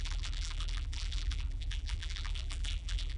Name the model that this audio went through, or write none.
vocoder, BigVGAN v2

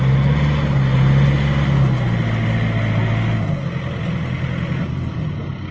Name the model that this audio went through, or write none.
none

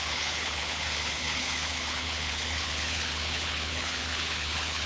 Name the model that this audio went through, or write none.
codec, HILCodec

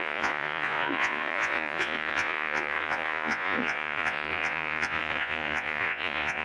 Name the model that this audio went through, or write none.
vocoder, Vocos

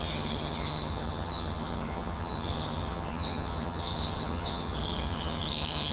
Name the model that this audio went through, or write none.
vocoder, HiFi-GAN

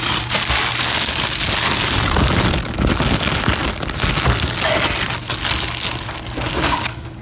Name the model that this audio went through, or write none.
none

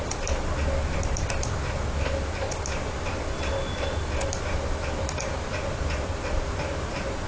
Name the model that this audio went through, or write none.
none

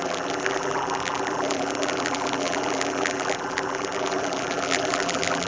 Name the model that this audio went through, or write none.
vocoder, BigVGAN v2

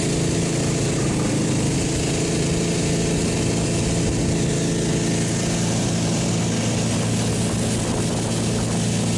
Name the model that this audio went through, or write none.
none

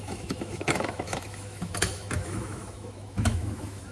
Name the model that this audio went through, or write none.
autoencoder, DAC-VAE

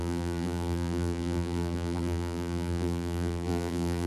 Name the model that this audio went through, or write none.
vocoder, BigVGAN v2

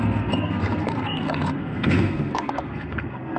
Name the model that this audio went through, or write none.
codec, SNAC